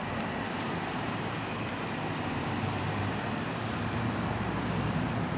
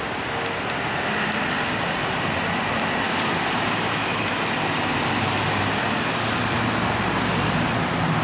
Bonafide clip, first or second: second